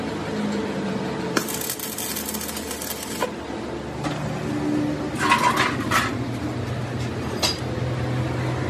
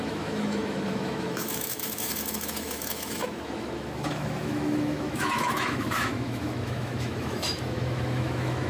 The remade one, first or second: second